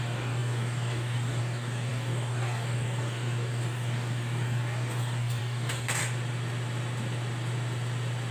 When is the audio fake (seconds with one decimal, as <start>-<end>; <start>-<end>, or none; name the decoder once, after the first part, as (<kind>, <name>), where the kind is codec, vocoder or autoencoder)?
0.0-6.0 (codec, DAC)